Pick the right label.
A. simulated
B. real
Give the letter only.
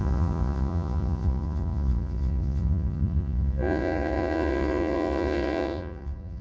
A